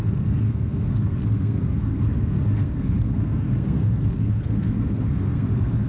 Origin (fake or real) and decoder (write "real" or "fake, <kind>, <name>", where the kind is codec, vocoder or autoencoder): fake, codec, SNAC